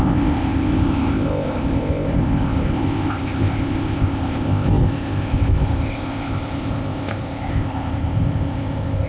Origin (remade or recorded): remade